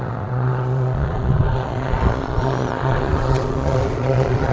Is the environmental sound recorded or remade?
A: remade